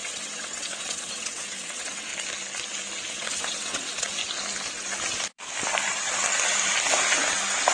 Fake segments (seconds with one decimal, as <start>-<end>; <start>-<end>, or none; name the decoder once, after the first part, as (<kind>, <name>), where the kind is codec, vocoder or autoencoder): 0.0-2.1 (vocoder, WaveNeXt); 3.1-4.2